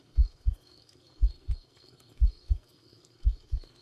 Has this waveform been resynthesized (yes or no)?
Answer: yes